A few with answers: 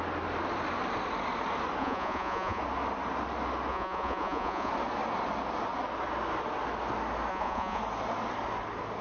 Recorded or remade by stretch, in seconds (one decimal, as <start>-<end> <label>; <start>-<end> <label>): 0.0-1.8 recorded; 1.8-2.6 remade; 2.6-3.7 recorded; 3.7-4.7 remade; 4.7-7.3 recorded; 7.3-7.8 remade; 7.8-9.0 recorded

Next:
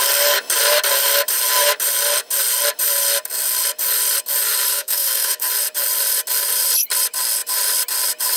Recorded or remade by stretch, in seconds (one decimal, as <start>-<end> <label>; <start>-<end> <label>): 0.0-4.7 recorded; 4.7-5.5 remade; 5.5-8.4 recorded

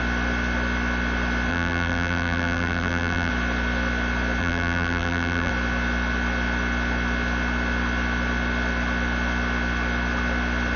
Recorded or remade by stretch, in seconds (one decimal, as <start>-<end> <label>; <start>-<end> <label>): 0.0-1.5 recorded; 1.5-3.3 remade; 3.3-4.4 recorded; 4.4-5.5 remade; 5.5-10.8 recorded

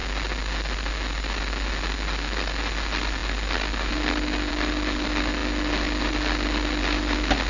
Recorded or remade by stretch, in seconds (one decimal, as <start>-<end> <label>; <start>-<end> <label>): 0.0-7.5 recorded

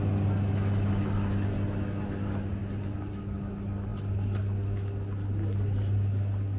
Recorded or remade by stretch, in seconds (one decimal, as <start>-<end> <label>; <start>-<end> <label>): 0.0-6.6 recorded